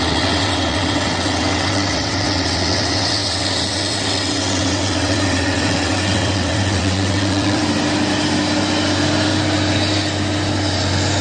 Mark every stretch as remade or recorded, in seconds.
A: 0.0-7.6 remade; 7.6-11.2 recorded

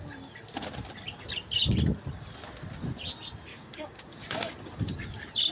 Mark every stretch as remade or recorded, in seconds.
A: 0.0-3.5 recorded; 3.5-4.5 remade; 4.5-5.5 recorded

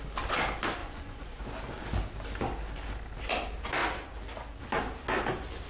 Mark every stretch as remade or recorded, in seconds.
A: 0.0-0.8 recorded; 0.8-1.4 remade; 1.4-5.7 recorded

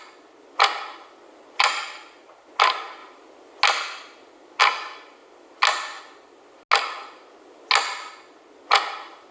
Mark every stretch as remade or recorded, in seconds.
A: 0.0-9.3 recorded

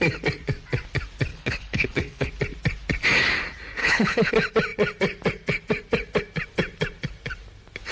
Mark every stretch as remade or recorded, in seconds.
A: 0.0-1.3 recorded; 1.3-2.3 remade; 2.3-3.8 recorded; 3.8-4.3 remade; 4.3-7.9 recorded

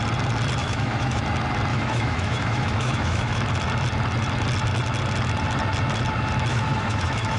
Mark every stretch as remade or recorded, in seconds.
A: 0.0-0.6 recorded; 0.6-1.2 remade; 1.2-1.7 recorded; 1.7-3.4 remade; 3.4-6.5 recorded; 6.5-7.4 remade

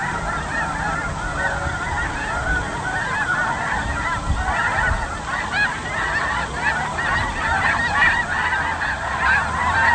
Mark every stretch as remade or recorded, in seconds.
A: 0.0-9.9 recorded

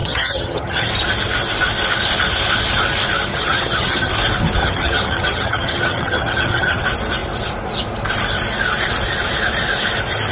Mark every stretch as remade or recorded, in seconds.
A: 0.0-0.9 remade; 0.9-3.3 recorded; 3.3-4.1 remade; 4.1-4.6 recorded; 4.6-6.8 remade; 6.8-10.3 recorded